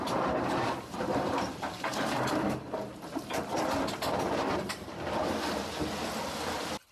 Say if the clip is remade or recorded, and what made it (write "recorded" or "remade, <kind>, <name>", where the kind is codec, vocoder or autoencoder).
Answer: remade, vocoder, BigVGAN v2